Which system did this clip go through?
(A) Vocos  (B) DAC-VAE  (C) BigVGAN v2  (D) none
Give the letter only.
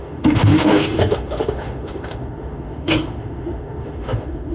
B